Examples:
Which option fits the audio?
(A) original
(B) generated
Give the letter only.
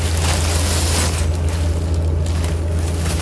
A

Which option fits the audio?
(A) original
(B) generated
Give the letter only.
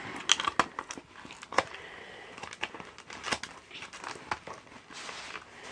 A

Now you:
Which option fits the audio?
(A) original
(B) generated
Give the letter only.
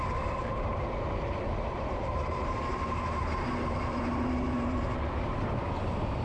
B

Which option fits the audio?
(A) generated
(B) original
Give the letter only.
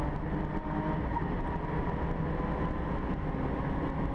B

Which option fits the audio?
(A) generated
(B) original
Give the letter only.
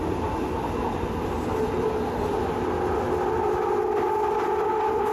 B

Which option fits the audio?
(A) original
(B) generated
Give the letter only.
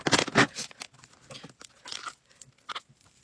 A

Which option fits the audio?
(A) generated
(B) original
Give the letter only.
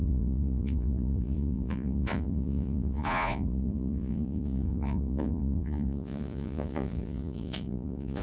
A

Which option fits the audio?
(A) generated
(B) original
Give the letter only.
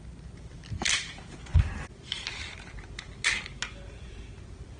B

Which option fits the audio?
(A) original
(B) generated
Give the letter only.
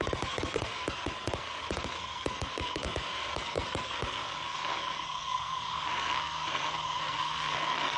B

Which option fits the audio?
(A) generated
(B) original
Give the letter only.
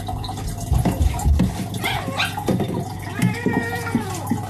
B